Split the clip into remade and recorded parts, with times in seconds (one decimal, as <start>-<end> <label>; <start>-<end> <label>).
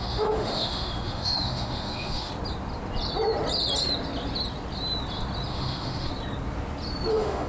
0.0-2.3 remade; 2.3-5.5 recorded; 5.5-6.1 remade; 6.1-7.1 recorded; 7.1-7.5 remade